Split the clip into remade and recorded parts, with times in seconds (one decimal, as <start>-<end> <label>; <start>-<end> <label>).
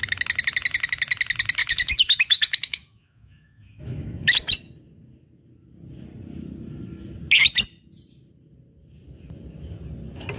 0.0-1.6 recorded; 1.6-4.4 remade; 4.4-10.4 recorded